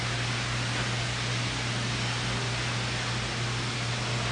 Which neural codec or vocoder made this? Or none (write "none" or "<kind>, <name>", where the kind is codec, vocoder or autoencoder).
none